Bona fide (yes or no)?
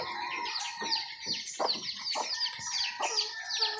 yes